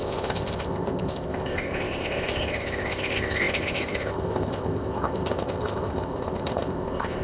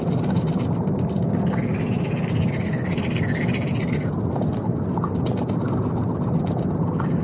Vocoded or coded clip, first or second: first